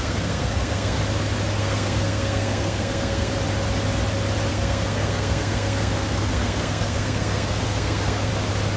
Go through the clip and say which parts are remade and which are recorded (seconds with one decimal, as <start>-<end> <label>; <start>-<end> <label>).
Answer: 0.0-1.0 remade; 1.0-1.6 recorded; 1.6-3.3 remade; 3.3-4.5 recorded; 4.5-8.3 remade; 8.3-8.8 recorded